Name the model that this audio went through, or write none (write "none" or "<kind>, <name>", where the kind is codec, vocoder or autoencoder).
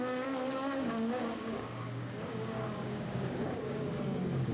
codec, DAC